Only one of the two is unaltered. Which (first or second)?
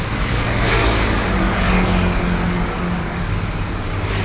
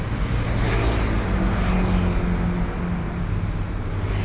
second